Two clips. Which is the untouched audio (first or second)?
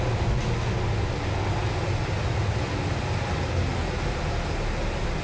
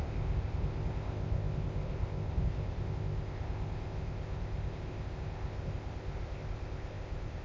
first